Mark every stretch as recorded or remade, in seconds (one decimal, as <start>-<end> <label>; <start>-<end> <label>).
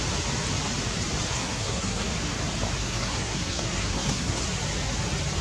0.0-1.3 recorded; 1.3-2.1 remade; 2.1-2.8 recorded; 2.8-4.4 remade; 4.4-5.4 recorded